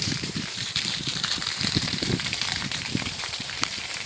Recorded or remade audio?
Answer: remade